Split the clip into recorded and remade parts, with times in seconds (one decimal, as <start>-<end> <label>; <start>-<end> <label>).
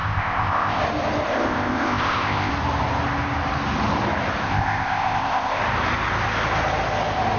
0.0-0.8 remade; 0.8-1.3 recorded; 1.3-2.5 remade; 2.5-4.4 recorded; 4.4-5.6 remade; 5.6-7.4 recorded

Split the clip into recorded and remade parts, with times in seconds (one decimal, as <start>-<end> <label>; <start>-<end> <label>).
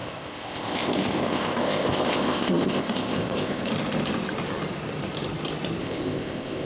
0.0-3.7 remade; 3.7-5.8 recorded; 5.8-6.7 remade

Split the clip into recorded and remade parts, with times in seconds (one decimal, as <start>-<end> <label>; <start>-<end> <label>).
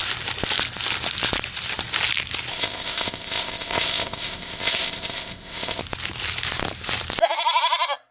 0.0-2.5 recorded; 2.5-5.8 remade; 5.8-8.1 recorded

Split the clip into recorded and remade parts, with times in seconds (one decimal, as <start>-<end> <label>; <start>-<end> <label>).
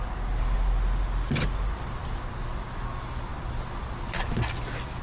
0.0-5.0 recorded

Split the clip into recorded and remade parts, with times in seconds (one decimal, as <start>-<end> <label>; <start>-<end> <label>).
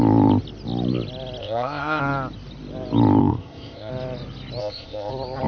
0.0-1.4 recorded; 1.4-2.0 remade; 2.0-3.2 recorded; 3.2-3.9 remade; 3.9-4.6 recorded; 4.6-5.1 remade; 5.1-5.5 recorded